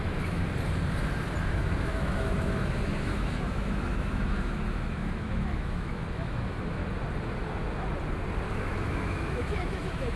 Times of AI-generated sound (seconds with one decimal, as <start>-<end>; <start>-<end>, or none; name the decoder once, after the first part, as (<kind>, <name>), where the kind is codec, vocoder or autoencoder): 0.0-0.4 (autoencoder, DAC-VAE); 1.4-6.8; 8.5-10.2